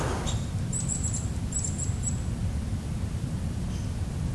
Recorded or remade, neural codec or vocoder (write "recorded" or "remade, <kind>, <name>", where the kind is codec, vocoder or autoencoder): recorded